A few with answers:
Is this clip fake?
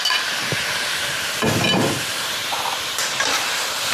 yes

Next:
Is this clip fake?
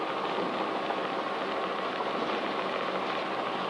no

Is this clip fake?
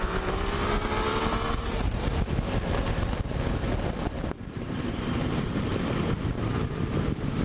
yes